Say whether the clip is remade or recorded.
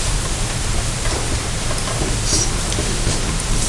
recorded